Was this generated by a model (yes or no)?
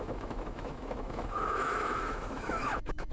yes